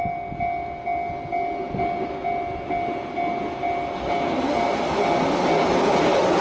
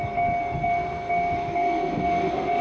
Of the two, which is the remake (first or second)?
second